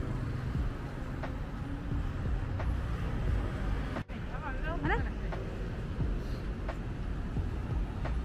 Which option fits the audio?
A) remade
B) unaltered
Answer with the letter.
B